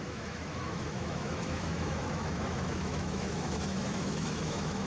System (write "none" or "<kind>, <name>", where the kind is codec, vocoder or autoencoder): autoencoder, DAC-VAE